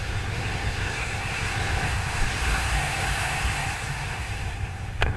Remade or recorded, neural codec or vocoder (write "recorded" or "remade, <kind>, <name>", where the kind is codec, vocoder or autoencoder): remade, codec, SNAC